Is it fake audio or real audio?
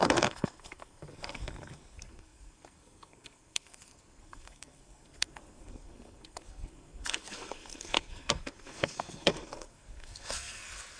fake